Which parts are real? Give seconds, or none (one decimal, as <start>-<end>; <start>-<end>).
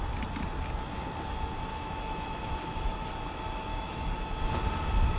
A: 0.0-1.7; 3.1-3.7; 4.5-5.2